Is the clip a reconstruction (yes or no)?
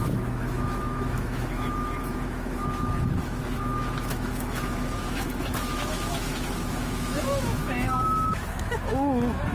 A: yes